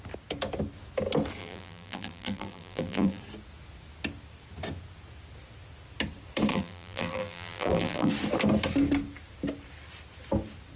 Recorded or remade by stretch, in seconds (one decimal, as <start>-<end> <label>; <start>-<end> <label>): 0.0-1.4 recorded; 1.4-3.2 remade; 3.2-6.5 recorded; 6.5-8.1 remade; 8.1-10.8 recorded